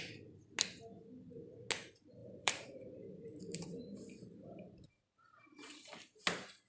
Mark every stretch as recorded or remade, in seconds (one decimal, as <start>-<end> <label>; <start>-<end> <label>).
0.0-2.2 recorded; 2.2-6.2 remade; 6.2-6.7 recorded